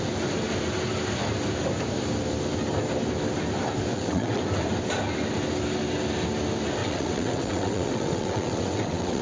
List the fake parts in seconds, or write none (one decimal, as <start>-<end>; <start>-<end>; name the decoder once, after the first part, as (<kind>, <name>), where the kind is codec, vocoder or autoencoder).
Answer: 3.9-4.4 (vocoder, WaveNeXt); 6.8-9.2